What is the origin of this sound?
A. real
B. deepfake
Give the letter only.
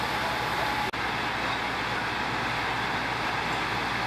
A